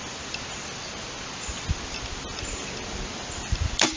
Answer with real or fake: real